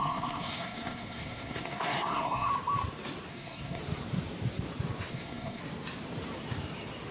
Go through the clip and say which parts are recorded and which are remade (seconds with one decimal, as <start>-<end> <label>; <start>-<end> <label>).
0.0-2.5 remade; 2.5-3.3 recorded; 3.3-3.8 remade; 3.8-5.1 recorded; 5.1-5.6 remade; 5.6-7.1 recorded